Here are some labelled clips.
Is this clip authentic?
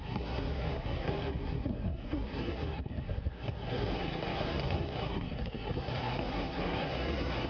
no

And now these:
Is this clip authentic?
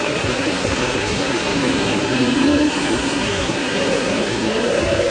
no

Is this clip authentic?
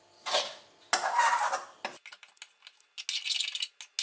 yes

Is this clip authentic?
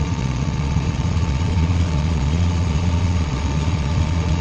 no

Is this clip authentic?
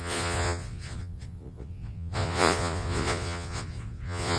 no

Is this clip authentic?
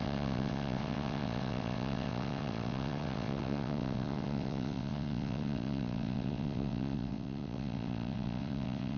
no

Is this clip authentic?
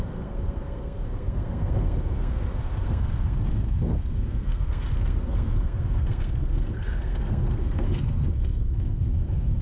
no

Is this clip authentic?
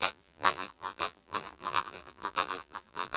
no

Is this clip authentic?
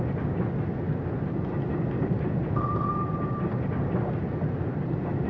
yes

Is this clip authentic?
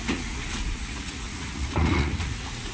no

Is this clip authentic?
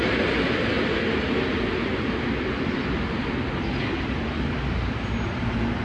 yes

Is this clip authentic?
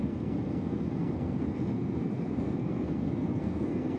no